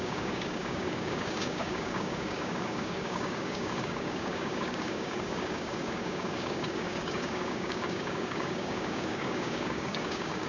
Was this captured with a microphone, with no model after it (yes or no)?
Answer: no